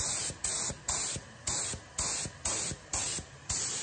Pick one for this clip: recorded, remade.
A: recorded